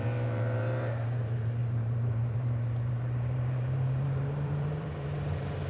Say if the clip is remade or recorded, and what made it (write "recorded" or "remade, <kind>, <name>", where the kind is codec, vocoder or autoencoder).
remade, vocoder, BigVGAN v2